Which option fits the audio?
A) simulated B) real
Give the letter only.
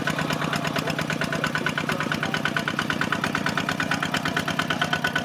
B